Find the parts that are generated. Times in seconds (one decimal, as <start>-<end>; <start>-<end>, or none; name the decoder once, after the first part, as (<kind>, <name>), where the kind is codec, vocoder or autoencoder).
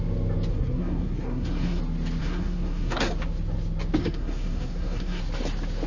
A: 0.5-1.8 (codec, SNAC); 2.2-3.1; 4.0-5.2